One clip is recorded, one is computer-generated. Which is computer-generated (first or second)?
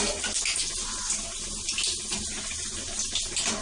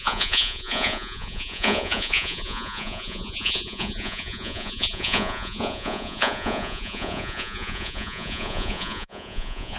second